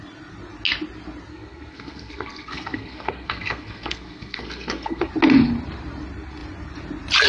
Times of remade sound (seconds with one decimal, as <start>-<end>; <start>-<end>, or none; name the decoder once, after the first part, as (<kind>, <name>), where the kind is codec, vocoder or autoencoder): 1.3-5.1 (codec, SNAC)